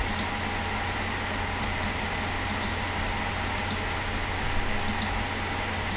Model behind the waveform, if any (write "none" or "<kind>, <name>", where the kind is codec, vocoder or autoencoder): none